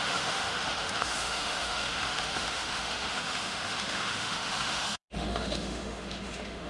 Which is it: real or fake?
fake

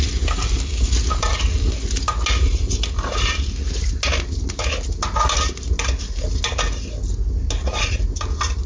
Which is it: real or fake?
real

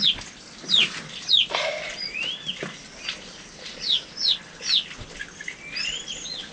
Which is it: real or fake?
real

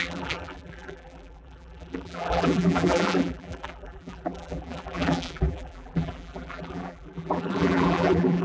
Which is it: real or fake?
fake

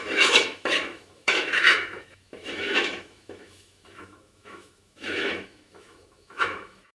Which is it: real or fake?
fake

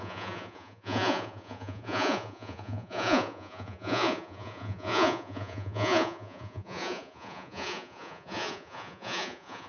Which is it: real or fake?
fake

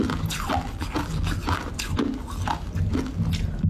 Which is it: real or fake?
real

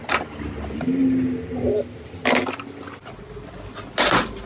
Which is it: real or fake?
real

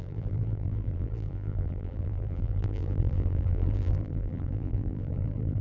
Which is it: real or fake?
fake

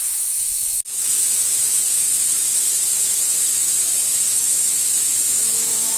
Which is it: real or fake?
fake